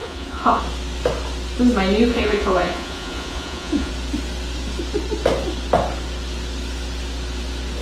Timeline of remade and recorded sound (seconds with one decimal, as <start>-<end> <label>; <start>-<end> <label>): 0.0-0.6 remade; 0.6-2.1 recorded; 2.1-3.9 remade; 3.9-7.8 recorded